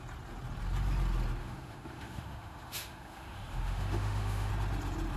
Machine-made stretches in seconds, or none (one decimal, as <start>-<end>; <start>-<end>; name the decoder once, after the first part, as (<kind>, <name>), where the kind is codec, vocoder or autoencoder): 1.4-4.5 (autoencoder, DAC-VAE)